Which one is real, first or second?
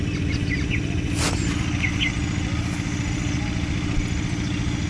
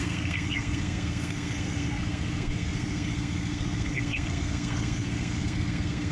first